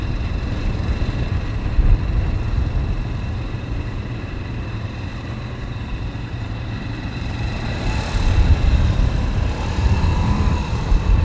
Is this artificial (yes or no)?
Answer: yes